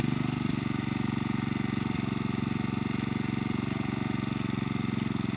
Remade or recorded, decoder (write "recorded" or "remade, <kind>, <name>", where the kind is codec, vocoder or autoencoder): recorded